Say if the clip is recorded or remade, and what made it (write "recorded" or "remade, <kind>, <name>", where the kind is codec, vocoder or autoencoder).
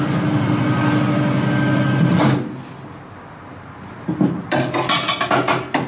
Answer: recorded